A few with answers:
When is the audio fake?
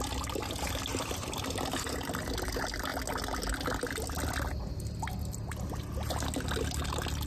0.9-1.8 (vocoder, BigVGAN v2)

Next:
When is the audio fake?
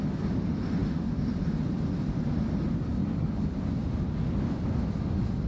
none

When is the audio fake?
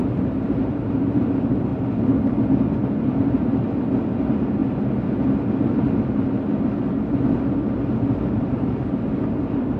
0.0-1.7 (vocoder, BigVGAN v2); 4.1-4.6; 8.4-9.8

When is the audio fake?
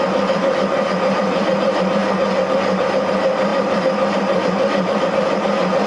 0.0-2.0 (vocoder, BigVGAN v2); 2.8-5.9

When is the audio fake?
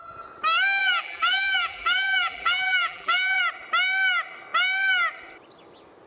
0.8-3.4 (vocoder, BigVGAN v2)